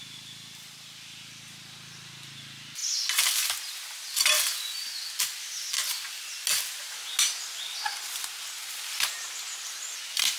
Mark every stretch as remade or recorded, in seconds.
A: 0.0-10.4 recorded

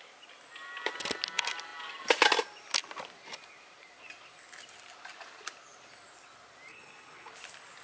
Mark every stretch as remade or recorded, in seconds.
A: 0.0-6.7 recorded; 6.7-7.3 remade; 7.3-7.8 recorded

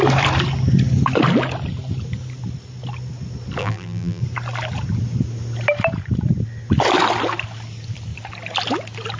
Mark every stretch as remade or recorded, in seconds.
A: 0.0-3.6 recorded; 3.6-4.2 remade; 4.2-9.2 recorded

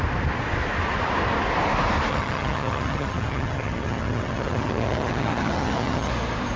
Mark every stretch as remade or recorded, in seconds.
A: 0.0-2.1 recorded; 2.1-6.1 remade; 6.1-6.6 recorded